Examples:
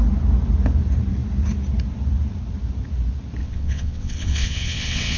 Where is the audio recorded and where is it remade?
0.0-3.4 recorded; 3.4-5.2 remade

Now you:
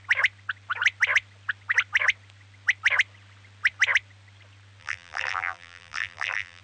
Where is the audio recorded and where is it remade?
0.0-4.8 recorded; 4.8-6.6 remade

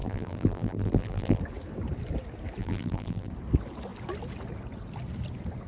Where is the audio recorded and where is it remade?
0.0-1.4 remade; 1.4-2.6 recorded; 2.6-3.3 remade; 3.3-5.7 recorded

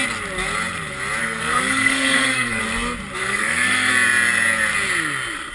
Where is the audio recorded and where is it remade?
0.0-1.2 recorded; 1.2-2.6 remade; 2.6-3.2 recorded; 3.2-3.9 remade; 3.9-5.5 recorded

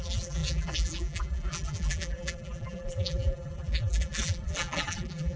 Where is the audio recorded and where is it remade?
0.0-5.4 remade

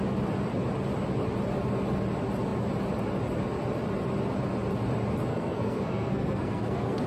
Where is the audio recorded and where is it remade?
0.0-5.3 recorded; 5.3-7.1 remade